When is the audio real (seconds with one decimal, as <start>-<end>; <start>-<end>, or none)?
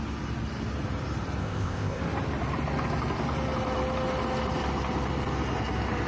0.0-1.4; 2.0-6.1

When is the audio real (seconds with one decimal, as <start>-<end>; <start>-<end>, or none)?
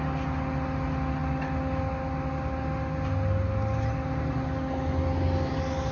0.0-5.9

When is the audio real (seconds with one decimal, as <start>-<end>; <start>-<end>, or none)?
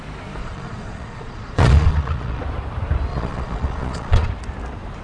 0.0-0.4; 2.4-3.1; 4.3-5.0